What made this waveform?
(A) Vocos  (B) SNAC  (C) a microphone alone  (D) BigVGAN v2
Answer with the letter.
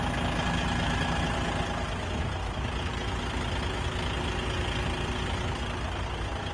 C